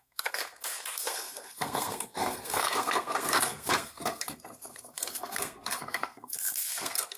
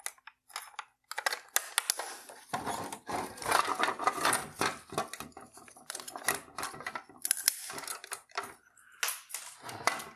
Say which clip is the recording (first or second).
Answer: second